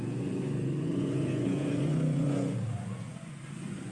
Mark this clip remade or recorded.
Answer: remade